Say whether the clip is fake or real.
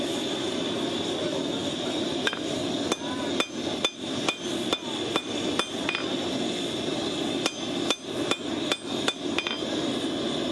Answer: real